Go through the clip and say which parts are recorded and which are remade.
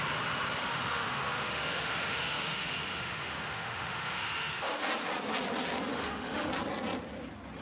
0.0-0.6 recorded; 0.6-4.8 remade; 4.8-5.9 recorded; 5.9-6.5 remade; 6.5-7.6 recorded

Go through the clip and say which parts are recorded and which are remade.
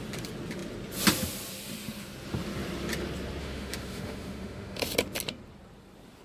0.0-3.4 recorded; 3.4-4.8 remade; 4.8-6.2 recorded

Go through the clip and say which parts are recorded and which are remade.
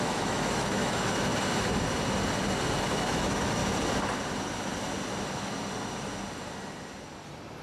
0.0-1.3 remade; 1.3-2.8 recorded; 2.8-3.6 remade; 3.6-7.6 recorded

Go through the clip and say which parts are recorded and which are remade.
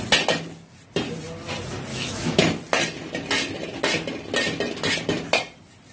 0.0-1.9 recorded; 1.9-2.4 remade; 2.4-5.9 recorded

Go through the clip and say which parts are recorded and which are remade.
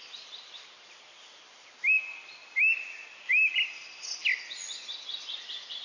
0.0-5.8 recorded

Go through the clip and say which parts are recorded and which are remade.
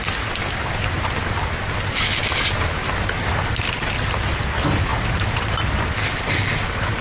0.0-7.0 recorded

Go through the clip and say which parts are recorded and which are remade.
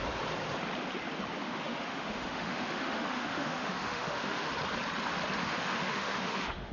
0.0-1.4 recorded; 1.4-4.5 remade; 4.5-5.4 recorded; 5.4-6.7 remade